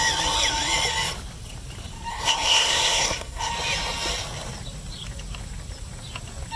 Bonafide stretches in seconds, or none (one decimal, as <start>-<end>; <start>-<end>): 0.0-2.1; 3.5-6.6